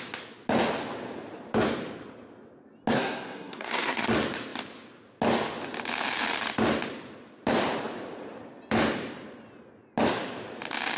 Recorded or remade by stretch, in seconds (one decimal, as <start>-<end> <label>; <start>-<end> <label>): 0.0-2.9 recorded; 2.9-4.1 remade; 4.1-11.0 recorded